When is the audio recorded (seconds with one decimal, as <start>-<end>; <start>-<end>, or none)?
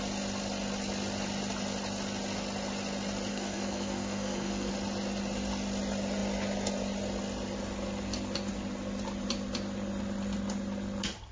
0.0-3.3; 4.7-11.3